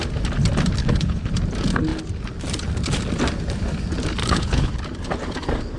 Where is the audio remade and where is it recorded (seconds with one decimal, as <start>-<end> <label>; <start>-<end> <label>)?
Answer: 0.0-0.8 recorded; 0.8-1.3 remade; 1.3-4.2 recorded; 4.2-4.7 remade; 4.7-5.8 recorded